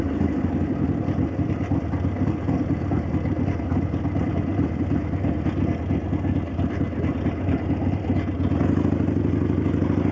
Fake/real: real